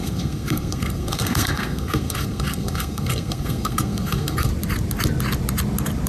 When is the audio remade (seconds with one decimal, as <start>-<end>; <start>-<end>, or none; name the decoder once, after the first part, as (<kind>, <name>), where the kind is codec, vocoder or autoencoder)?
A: 0.0-4.5 (codec, SNAC)